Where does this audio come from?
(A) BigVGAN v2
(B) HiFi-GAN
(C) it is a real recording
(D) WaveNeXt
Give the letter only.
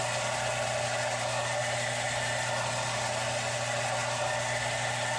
C